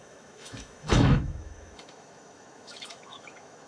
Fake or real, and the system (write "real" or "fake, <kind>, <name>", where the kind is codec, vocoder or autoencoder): fake, autoencoder, DAC-VAE